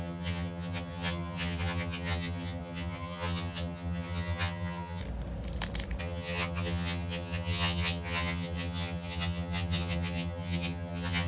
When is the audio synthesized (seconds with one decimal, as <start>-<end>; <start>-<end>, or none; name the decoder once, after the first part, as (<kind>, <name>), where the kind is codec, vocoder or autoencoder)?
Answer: 0.0-5.0 (vocoder, HiFi-GAN); 6.0-11.3